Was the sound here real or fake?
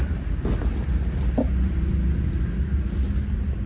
real